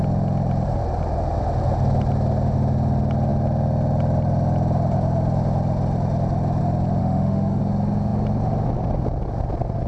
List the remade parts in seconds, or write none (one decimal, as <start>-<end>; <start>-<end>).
7.0-7.6